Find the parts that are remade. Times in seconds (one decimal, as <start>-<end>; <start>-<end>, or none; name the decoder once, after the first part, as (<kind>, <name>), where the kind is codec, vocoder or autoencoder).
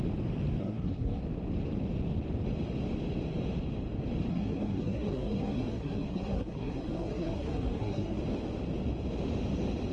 0.6-1.2 (codec, SNAC); 4.3-8.2